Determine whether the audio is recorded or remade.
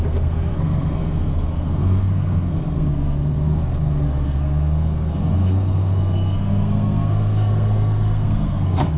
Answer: remade